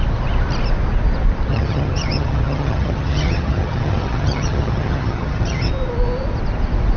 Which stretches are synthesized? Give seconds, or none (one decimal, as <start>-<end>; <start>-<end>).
1.5-5.7